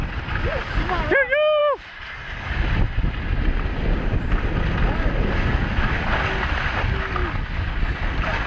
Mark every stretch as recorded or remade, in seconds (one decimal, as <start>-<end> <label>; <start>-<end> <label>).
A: 0.0-8.5 recorded